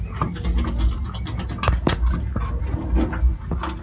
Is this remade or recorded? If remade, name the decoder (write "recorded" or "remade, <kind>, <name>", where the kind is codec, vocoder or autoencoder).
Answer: recorded